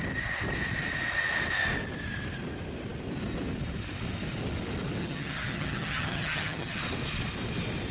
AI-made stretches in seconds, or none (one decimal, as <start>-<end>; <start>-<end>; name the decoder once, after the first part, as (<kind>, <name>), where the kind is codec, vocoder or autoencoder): 5.0-6.8 (vocoder, HiFi-GAN)